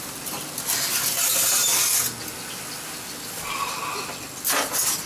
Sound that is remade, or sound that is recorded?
recorded